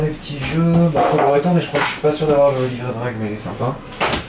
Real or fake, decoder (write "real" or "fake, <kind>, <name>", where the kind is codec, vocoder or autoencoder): real